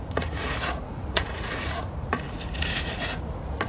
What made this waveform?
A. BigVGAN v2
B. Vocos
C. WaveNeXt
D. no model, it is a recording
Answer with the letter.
B